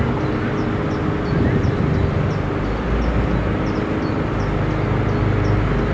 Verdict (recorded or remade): recorded